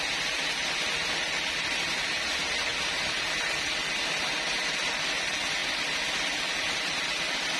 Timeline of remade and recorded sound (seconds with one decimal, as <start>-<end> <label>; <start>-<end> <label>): 0.0-7.6 recorded